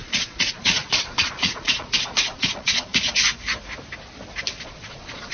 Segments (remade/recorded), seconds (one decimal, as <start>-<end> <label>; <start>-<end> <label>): 0.0-2.9 remade; 2.9-4.6 recorded; 4.6-5.3 remade